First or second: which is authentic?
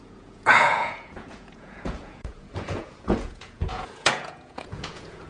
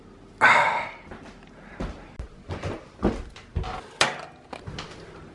second